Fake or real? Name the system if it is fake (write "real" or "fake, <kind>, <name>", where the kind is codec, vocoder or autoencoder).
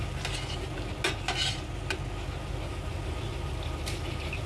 real